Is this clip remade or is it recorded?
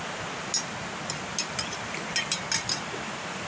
recorded